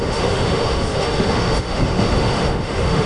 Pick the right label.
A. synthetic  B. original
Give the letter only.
A